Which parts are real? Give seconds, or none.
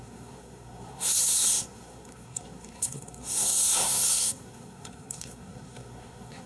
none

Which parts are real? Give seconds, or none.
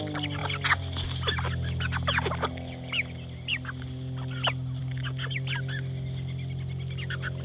0.0-7.4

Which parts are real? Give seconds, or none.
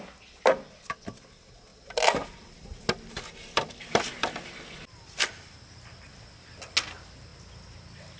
0.0-8.2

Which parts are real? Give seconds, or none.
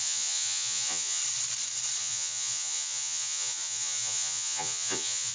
1.2-2.0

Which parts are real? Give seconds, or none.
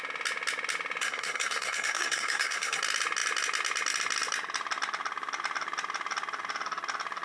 0.0-1.0; 2.8-7.2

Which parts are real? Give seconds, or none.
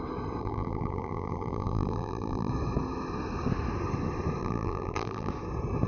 0.0-0.4; 2.5-4.4; 5.3-5.9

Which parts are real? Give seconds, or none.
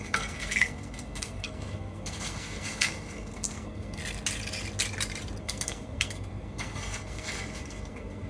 4.0-5.4